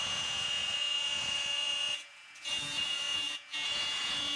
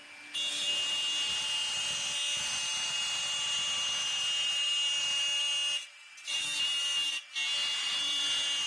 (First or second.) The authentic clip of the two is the second